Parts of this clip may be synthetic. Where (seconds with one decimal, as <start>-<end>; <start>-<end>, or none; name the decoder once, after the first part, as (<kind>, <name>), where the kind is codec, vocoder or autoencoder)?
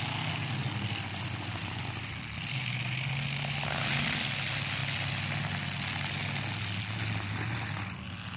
1.6-2.8 (vocoder, BigVGAN v2)